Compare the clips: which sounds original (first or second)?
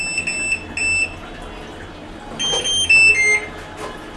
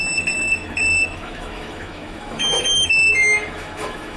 first